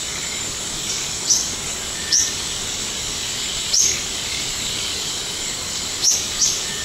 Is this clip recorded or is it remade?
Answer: remade